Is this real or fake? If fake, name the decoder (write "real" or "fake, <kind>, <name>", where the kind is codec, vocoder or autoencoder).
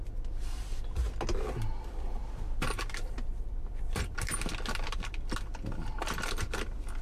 real